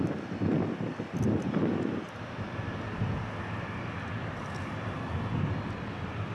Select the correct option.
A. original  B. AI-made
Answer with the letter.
A